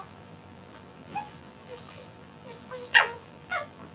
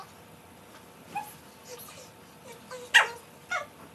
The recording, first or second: second